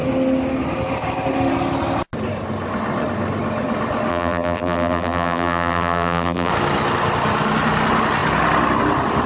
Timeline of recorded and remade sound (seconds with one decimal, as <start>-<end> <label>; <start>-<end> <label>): 0.0-4.1 recorded; 4.1-6.5 remade; 6.5-9.3 recorded